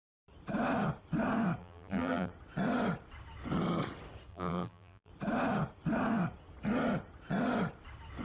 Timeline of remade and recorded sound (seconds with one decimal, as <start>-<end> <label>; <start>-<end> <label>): 0.0-1.6 recorded; 1.6-2.3 remade; 2.3-4.3 recorded; 4.3-5.1 remade; 5.1-8.2 recorded